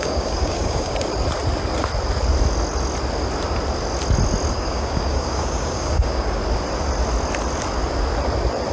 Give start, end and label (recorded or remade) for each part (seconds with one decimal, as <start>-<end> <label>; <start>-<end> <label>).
0.0-1.1 remade; 1.1-4.5 recorded; 4.5-6.4 remade; 6.4-8.7 recorded

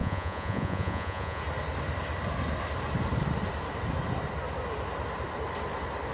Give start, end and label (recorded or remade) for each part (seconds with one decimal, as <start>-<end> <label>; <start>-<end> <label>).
0.0-1.4 remade; 1.4-6.1 recorded

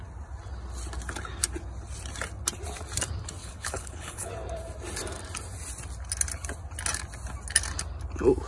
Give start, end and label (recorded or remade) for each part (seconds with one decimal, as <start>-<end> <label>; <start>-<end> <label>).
0.0-3.4 recorded; 3.4-4.3 remade; 4.3-8.5 recorded

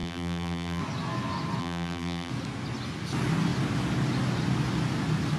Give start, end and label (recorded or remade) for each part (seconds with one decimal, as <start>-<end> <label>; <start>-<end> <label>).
0.0-0.8 remade; 0.8-1.6 recorded; 1.6-2.3 remade; 2.3-5.4 recorded

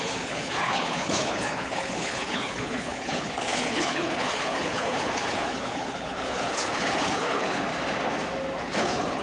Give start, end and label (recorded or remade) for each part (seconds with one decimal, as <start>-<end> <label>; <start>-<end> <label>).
0.0-7.7 remade; 7.7-8.6 recorded; 8.6-9.2 remade

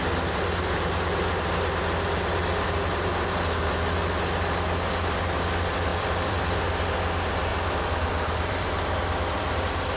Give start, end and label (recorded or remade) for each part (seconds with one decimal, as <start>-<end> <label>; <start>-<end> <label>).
0.0-5.9 recorded; 5.9-6.6 remade; 6.6-7.5 recorded; 7.5-9.6 remade; 9.6-10.0 recorded